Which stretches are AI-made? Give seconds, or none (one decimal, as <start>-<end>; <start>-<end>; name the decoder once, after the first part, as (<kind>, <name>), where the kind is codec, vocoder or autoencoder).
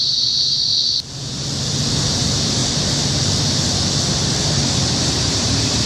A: 0.0-0.7 (vocoder, BigVGAN v2); 2.1-2.6; 5.1-5.9